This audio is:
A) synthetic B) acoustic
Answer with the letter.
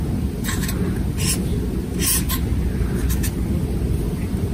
B